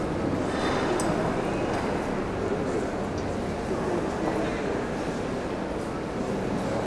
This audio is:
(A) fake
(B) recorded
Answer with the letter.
B